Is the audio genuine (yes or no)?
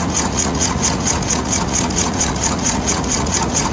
no